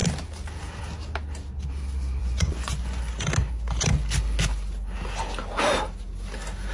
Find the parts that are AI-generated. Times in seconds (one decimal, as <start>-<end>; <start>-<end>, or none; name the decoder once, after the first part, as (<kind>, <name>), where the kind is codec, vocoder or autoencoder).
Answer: 2.2-3.0 (vocoder, Vocos)